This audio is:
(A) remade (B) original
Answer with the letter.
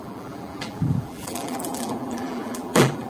A